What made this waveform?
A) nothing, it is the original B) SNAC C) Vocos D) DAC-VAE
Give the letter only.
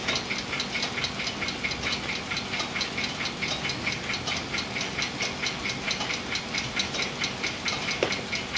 A